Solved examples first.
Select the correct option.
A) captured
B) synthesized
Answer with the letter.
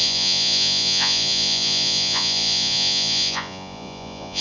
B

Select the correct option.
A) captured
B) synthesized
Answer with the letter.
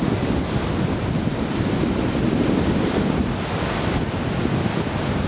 A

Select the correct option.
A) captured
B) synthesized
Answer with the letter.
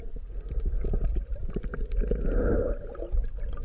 A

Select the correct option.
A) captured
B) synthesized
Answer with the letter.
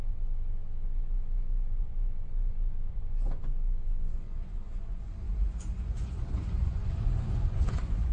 B